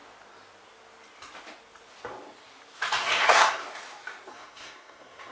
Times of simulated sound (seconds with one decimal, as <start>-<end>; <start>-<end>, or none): 3.2-3.6; 4.3-5.3